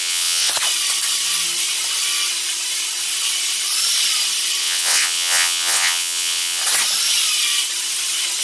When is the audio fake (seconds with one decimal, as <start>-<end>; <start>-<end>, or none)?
0.0-0.5; 4.6-6.6